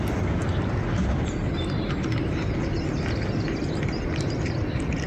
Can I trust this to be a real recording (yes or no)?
yes